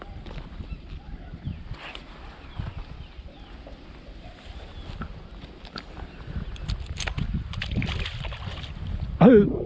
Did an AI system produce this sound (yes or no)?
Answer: no